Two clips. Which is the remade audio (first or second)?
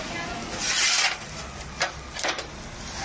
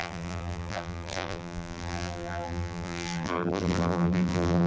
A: second